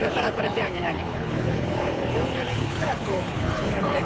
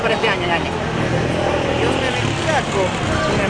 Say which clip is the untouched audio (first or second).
second